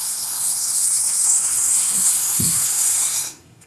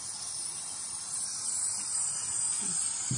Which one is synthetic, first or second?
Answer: first